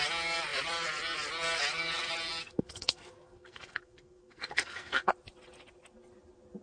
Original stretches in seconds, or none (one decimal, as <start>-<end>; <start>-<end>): 0.0-2.4; 5.1-6.6